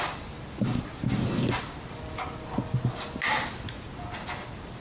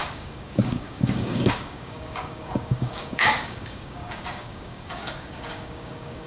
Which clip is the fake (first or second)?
second